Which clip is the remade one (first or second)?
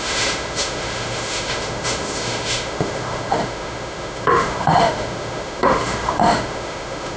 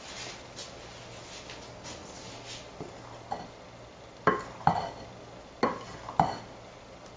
first